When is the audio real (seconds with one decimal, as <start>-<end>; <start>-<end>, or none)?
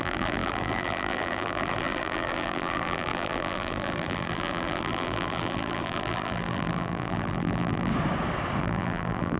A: 7.9-8.6